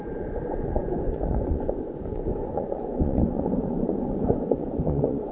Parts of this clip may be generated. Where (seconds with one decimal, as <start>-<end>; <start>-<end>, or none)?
0.0-5.3